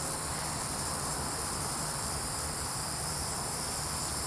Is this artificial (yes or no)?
yes